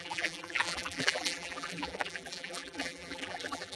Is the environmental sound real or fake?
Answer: fake